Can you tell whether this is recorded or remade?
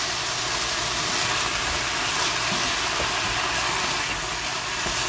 recorded